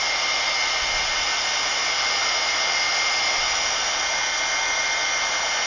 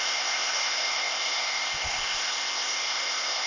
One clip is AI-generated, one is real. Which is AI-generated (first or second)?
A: second